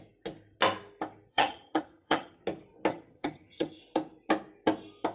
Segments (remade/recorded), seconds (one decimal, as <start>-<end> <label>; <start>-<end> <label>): 0.0-1.3 recorded; 1.3-2.4 remade; 2.4-2.9 recorded; 2.9-3.8 remade; 3.8-5.1 recorded